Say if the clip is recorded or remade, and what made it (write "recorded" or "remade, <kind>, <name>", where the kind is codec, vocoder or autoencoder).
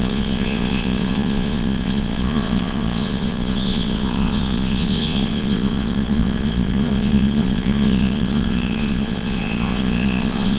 remade, vocoder, Vocos